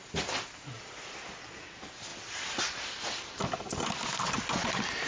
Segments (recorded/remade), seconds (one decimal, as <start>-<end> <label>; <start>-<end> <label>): 0.0-5.1 recorded